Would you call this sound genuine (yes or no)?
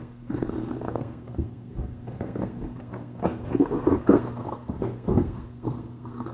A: no